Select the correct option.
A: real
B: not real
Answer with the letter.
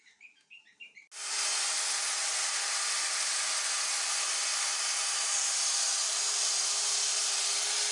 A